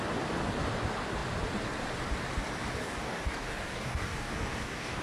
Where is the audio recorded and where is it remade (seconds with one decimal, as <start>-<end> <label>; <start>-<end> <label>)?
0.0-2.8 recorded; 2.8-5.0 remade